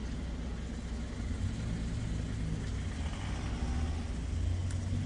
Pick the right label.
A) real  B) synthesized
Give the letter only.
A